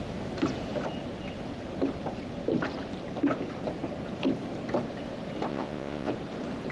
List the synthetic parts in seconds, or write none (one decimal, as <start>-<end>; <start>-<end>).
5.5-6.1